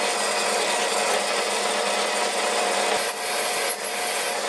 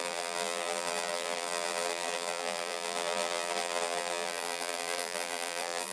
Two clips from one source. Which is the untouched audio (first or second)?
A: first